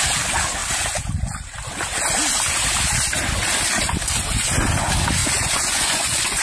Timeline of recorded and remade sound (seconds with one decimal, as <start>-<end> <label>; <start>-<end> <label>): 0.0-5.2 recorded; 5.2-6.4 remade